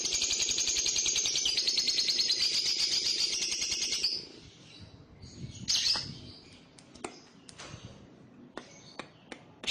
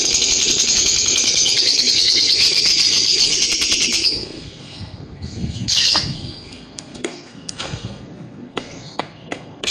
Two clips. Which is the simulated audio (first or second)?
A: second